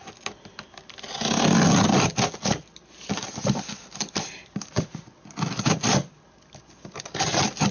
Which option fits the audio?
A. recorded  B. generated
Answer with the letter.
A